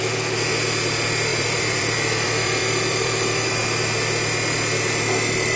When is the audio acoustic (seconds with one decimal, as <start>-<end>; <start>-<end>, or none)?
0.0-1.3; 3.5-5.6